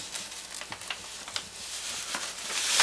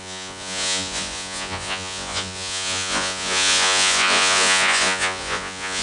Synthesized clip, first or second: second